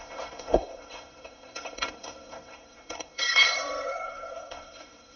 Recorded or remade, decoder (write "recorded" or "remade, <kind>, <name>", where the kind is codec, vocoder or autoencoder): remade, codec, SNAC